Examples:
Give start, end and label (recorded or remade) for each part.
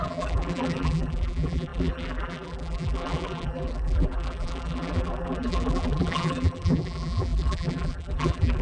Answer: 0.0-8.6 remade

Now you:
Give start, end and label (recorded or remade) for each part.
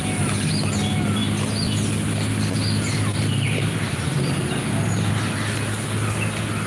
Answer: 0.0-6.7 recorded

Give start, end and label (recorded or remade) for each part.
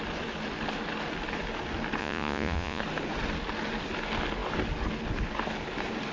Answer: 0.0-2.0 recorded; 2.0-2.8 remade; 2.8-6.1 recorded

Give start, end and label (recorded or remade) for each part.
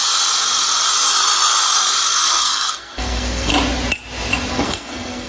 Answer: 0.0-2.3 recorded; 2.3-3.5 remade; 3.5-4.5 recorded; 4.5-5.3 remade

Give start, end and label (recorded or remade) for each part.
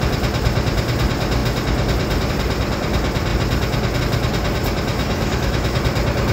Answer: 0.0-4.9 recorded; 4.9-5.8 remade; 5.8-6.3 recorded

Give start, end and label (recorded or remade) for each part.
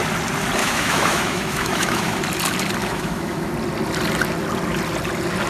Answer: 0.0-0.6 recorded; 0.6-2.2 remade; 2.2-2.8 recorded; 2.8-3.5 remade; 3.5-5.5 recorded